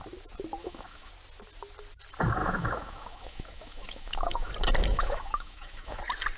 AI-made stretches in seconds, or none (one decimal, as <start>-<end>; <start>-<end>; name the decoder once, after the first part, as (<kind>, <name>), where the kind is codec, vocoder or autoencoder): 0.6-1.1 (autoencoder, DAC-VAE); 2.4-4.5; 4.9-6.0